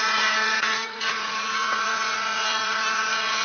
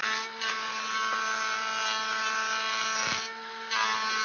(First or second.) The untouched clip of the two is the second